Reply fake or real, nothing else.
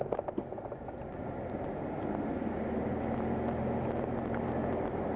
real